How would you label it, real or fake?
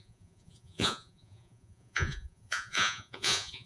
fake